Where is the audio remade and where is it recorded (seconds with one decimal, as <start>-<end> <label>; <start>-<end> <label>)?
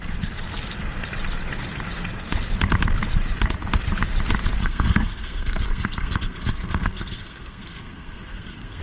0.0-4.6 recorded; 4.6-8.8 remade